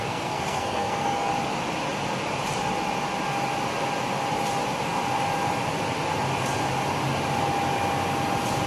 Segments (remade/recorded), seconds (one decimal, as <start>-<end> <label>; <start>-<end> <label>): 0.0-1.3 remade; 1.3-8.7 recorded